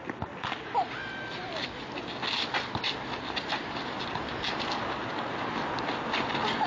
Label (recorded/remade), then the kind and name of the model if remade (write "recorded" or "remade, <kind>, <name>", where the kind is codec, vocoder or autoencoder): recorded